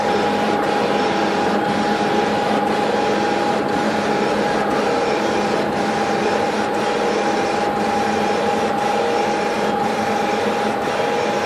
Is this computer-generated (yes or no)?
no